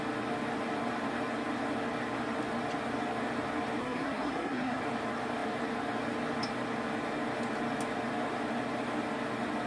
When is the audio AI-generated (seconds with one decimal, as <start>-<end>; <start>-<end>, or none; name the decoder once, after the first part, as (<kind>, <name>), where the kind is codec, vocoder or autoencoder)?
3.8-4.8 (codec, SNAC)